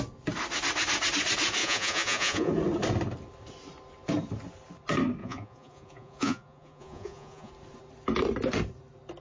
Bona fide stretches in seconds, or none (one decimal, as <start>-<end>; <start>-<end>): 0.0-1.6; 2.5-5.2; 7.5-9.2